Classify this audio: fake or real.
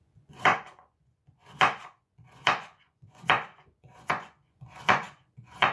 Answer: fake